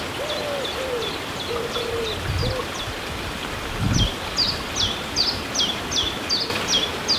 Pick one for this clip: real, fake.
real